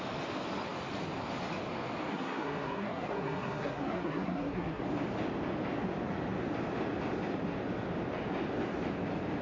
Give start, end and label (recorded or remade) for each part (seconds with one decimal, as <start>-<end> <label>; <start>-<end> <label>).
0.0-2.1 recorded; 2.1-4.8 remade; 4.8-9.4 recorded